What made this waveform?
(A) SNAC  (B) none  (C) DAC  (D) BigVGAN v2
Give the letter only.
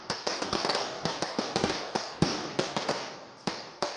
C